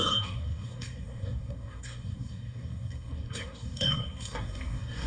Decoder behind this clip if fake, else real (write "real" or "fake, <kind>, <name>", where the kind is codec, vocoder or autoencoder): fake, codec, SNAC